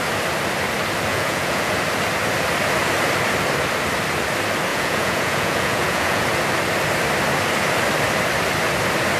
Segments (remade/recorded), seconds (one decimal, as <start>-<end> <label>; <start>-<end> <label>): 0.0-1.1 recorded; 1.1-1.7 remade; 1.7-4.7 recorded; 4.7-6.2 remade; 6.2-9.2 recorded